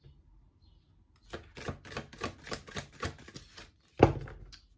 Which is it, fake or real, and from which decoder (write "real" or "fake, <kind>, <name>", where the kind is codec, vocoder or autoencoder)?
real